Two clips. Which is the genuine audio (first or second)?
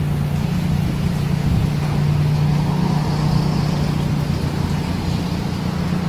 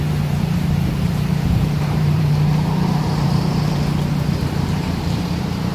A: first